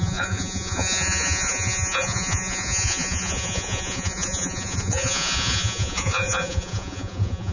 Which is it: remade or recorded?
remade